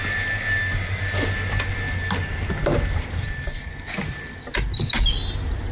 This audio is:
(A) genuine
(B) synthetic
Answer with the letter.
A